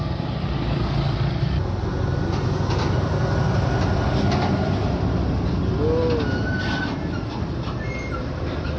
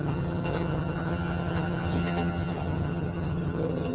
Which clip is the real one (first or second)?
first